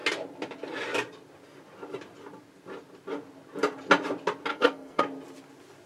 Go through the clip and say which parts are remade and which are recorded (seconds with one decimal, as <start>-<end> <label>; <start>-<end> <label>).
0.0-4.5 recorded; 4.5-5.0 remade; 5.0-5.9 recorded